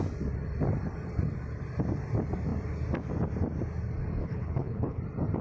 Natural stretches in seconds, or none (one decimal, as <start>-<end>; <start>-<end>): 0.0-4.2; 5.0-5.4